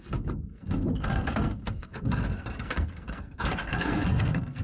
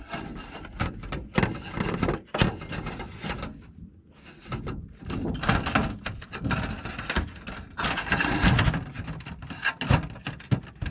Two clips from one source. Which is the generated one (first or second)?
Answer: first